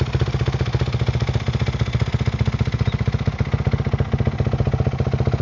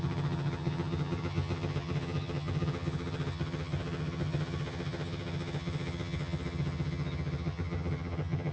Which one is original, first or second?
first